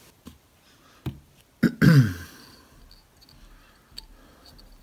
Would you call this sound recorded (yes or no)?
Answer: yes